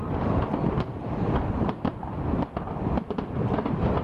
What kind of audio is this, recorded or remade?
recorded